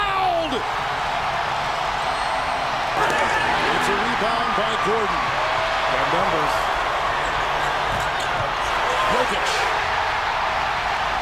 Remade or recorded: recorded